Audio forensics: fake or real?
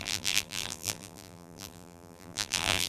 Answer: fake